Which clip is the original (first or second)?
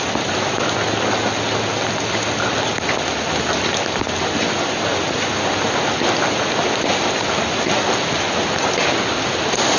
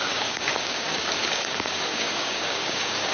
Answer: first